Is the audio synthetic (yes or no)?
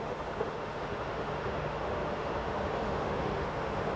yes